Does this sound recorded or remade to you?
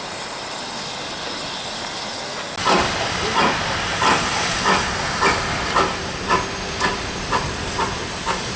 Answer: recorded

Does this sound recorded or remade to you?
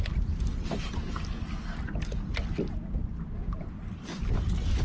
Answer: recorded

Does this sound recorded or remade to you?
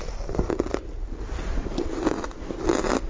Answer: recorded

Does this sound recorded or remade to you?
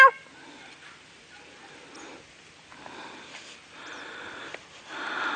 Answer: recorded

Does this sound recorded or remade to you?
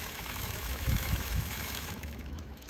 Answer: remade